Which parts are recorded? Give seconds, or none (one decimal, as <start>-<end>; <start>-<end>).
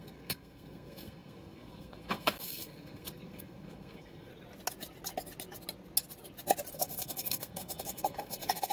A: 4.3-6.7